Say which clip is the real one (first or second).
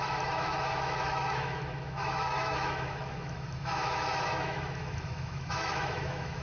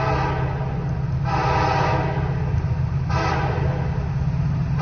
second